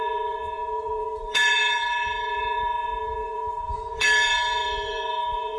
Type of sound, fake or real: fake